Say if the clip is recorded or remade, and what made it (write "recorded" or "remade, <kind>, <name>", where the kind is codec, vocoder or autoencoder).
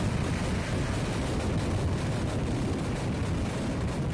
recorded